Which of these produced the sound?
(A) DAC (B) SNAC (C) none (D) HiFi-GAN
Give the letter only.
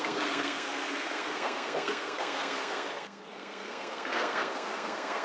B